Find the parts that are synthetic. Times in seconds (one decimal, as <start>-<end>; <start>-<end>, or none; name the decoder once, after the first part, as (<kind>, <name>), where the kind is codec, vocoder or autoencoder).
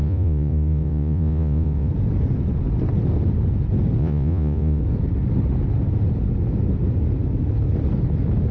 0.0-1.9 (vocoder, Vocos); 4.0-4.8